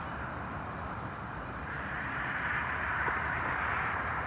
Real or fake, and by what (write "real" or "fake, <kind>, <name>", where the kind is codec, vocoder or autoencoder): fake, vocoder, BigVGAN v2